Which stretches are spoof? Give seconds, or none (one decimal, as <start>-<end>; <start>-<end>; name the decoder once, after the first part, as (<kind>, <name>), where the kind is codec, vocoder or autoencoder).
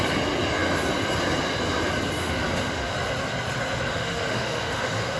2.2-2.9 (autoencoder, DAC-VAE); 3.9-5.2